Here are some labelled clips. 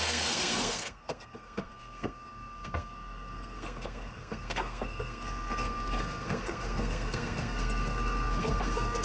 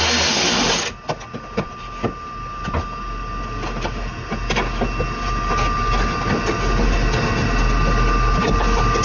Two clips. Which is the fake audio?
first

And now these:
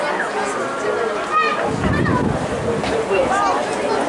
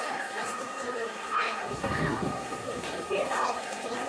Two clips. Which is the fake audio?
second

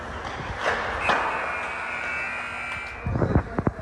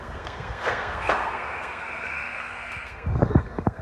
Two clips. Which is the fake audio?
second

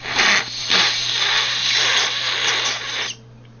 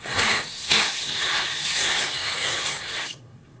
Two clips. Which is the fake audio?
second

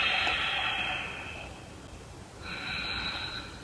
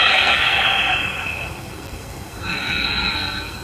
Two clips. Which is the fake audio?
second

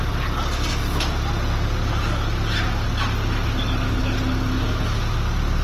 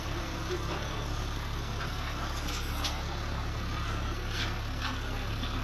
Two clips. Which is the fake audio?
second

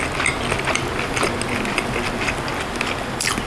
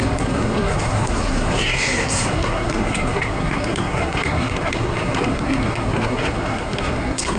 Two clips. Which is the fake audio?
second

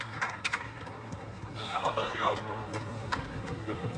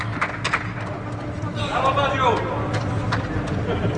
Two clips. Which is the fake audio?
first